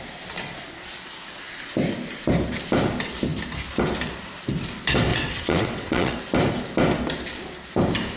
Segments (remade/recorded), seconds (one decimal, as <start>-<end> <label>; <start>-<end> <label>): 0.0-5.1 recorded; 5.1-6.2 remade; 6.2-8.2 recorded